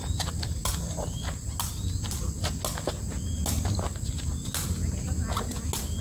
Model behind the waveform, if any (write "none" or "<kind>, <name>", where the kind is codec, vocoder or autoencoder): none